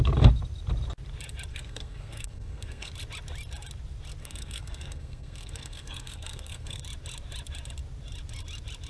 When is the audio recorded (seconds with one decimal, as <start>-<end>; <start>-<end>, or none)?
0.0-1.5; 2.9-4.2; 6.8-8.9